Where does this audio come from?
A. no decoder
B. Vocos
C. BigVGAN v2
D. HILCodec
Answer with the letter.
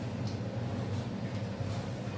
A